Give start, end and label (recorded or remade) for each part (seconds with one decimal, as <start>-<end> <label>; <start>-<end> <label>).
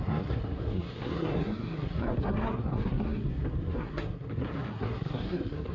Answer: 0.0-5.7 remade